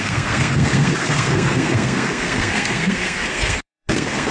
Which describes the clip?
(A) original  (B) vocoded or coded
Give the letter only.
B